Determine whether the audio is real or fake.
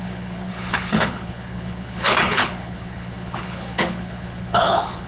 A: fake